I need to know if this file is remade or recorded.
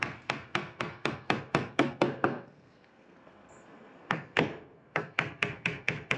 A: remade